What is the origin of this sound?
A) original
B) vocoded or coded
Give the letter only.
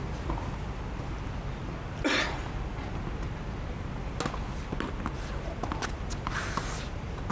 A